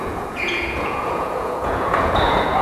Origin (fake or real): fake